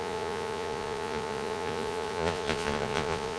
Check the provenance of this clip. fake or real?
fake